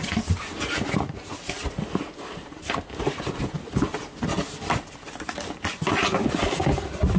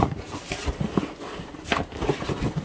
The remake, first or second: second